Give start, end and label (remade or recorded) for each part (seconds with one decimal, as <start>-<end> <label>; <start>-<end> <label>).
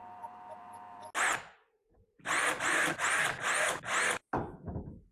0.0-5.1 recorded